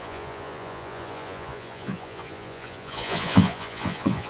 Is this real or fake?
fake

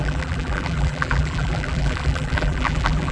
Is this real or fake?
fake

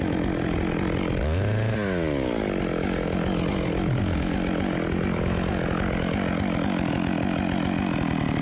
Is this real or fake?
real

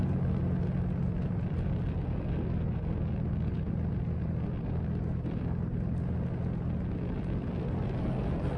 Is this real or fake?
real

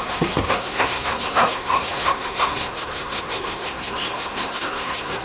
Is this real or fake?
fake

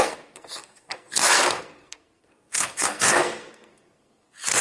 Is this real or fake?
fake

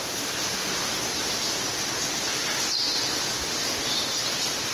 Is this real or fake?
real